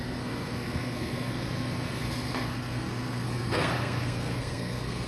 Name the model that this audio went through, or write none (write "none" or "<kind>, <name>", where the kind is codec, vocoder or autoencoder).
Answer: codec, SNAC